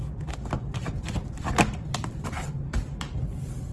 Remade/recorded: recorded